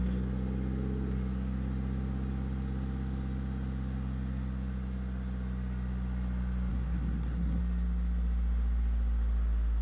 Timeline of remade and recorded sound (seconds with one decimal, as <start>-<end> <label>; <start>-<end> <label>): 0.0-6.7 recorded; 6.7-7.6 remade; 7.6-9.8 recorded